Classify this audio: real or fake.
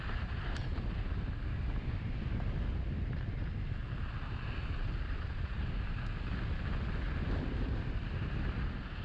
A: real